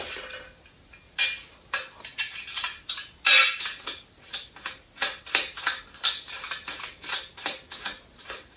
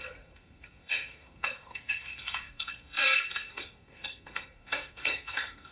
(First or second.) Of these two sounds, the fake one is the second